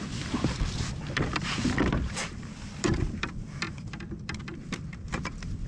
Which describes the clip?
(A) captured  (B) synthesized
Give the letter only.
B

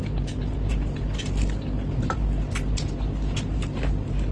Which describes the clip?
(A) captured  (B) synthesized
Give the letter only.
A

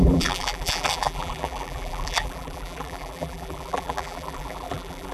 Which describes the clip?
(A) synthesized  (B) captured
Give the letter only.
A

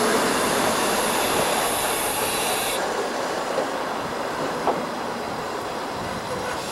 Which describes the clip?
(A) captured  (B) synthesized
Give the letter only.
B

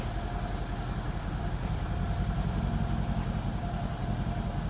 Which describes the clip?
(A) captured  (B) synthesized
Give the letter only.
A